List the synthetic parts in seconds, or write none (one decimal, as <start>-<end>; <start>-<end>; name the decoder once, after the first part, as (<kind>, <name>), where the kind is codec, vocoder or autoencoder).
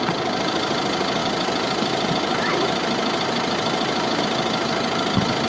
none